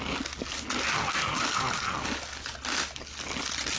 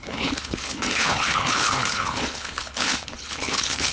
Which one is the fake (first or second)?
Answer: second